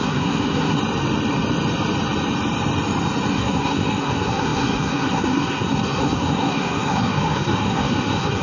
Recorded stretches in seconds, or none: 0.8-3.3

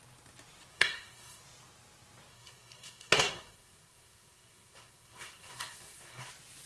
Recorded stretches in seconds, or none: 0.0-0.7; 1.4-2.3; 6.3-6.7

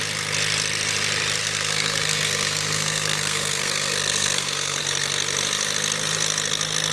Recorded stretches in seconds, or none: 0.0-1.4; 4.8-6.9

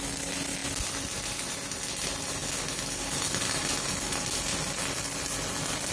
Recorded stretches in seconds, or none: 0.0-5.9